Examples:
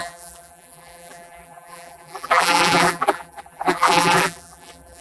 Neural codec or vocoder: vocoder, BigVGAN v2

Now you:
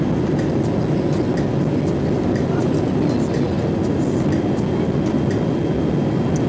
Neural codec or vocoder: none